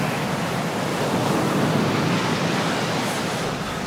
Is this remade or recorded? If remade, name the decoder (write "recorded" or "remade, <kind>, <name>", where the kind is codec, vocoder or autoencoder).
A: recorded